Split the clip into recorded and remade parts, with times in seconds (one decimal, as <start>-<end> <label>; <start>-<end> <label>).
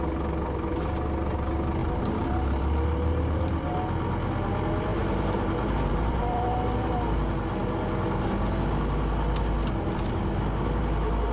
0.0-1.8 recorded; 1.8-3.4 remade; 3.4-4.9 recorded; 4.9-6.6 remade; 6.6-11.3 recorded